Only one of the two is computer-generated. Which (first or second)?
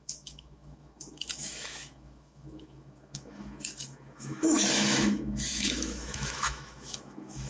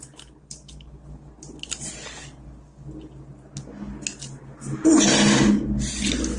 first